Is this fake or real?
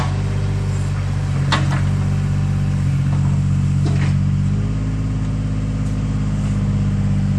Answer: real